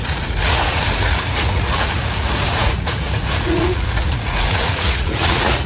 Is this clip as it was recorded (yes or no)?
no